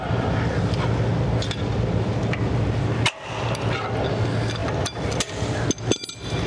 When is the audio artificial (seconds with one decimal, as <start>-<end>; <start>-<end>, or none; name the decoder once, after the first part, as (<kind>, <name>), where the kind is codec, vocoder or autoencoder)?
4.6-5.3 (vocoder, BigVGAN v2)